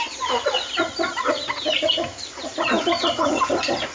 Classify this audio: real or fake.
real